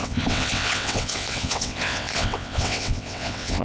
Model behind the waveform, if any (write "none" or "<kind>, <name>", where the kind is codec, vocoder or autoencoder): vocoder, WaveNeXt